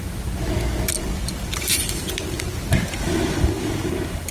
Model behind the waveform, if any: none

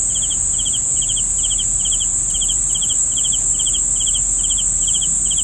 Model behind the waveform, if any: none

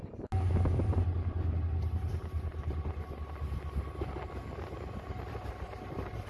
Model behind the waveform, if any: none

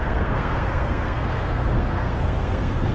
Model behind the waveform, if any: codec, SNAC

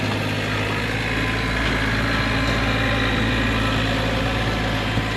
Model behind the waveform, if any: none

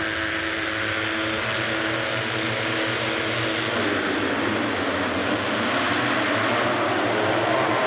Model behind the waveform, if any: none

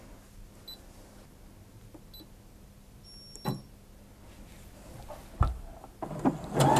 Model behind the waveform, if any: none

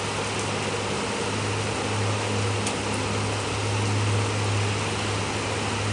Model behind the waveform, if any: none